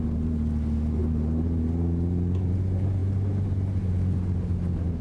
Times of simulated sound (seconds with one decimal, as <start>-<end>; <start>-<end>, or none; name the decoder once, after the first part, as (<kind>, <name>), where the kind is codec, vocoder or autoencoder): none